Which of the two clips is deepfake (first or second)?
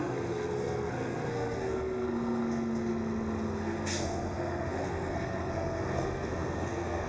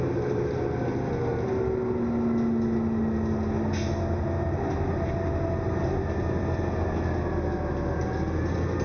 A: first